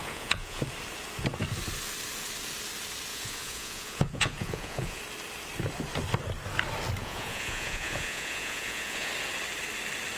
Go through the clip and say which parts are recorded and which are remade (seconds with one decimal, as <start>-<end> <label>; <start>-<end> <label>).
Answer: 0.0-0.6 remade; 0.6-3.1 recorded; 3.1-5.0 remade; 5.0-7.0 recorded; 7.0-9.1 remade; 9.1-10.2 recorded